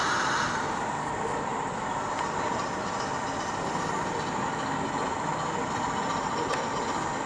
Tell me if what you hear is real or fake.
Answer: real